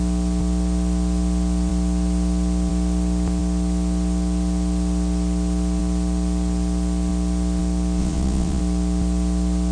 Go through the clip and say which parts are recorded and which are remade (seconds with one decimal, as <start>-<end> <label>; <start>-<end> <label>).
0.0-8.0 recorded; 8.0-8.6 remade; 8.6-9.7 recorded